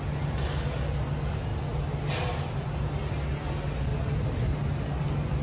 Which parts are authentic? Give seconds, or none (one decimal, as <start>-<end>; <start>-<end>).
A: 0.0-5.4